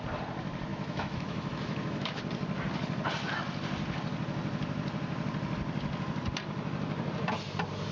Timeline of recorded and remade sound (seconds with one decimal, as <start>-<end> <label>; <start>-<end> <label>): 0.0-0.7 recorded; 0.7-2.2 remade; 2.2-7.9 recorded